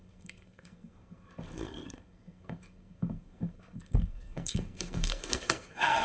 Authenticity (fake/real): fake